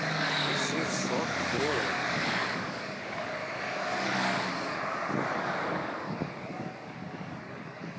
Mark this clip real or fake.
fake